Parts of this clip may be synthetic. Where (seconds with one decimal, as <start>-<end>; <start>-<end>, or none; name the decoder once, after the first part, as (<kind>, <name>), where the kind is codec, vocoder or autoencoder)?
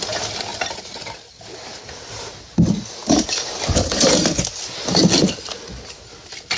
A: 3.0-4.6 (vocoder, BigVGAN v2)